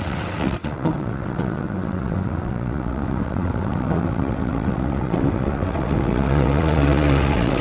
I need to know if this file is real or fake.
fake